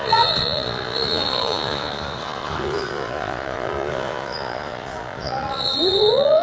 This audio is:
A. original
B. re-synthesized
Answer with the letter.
B